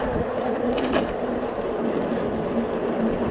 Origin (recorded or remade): remade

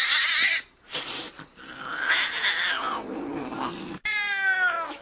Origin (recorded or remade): recorded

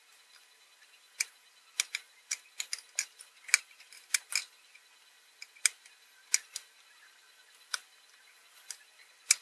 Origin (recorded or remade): recorded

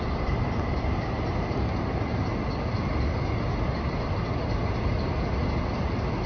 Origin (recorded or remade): recorded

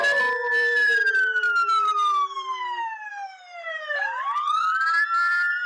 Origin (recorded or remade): remade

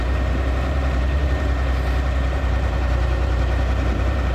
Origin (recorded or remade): remade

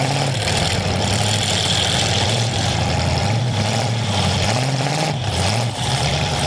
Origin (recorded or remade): remade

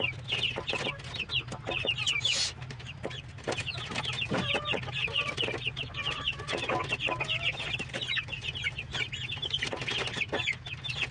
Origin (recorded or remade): recorded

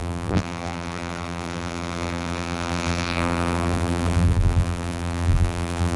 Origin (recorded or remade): remade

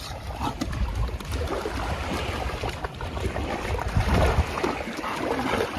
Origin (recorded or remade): recorded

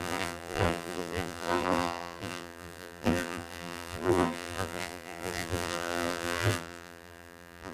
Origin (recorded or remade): remade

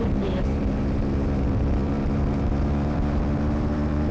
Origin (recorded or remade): remade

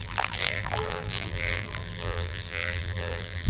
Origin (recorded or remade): remade